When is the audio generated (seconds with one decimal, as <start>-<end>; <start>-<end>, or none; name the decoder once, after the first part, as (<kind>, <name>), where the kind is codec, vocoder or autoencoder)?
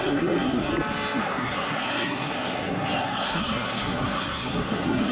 0.0-0.7 (codec, SNAC); 1.2-5.1